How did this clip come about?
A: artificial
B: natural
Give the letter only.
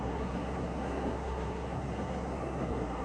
A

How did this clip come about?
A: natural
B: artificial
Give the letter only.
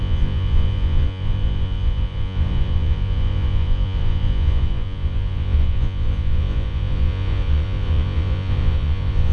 B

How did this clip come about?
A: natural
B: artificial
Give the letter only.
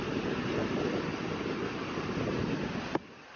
A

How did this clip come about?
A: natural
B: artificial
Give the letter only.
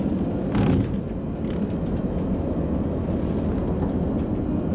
A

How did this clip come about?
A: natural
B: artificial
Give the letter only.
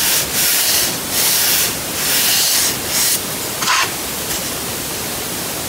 B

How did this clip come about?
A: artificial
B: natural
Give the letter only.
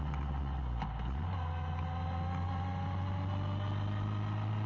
B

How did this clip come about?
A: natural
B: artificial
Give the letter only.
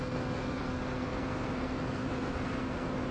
B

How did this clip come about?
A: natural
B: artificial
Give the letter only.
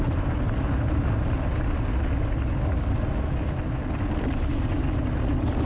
A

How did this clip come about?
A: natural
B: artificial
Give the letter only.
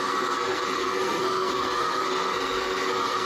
B